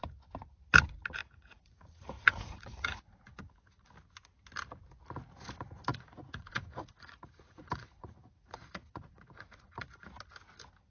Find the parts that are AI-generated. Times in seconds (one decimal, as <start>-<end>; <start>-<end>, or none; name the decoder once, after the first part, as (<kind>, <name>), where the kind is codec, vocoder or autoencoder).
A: 1.2-3.9 (vocoder, Vocos); 5.9-10.1